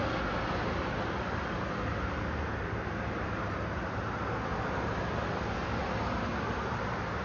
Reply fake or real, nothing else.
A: real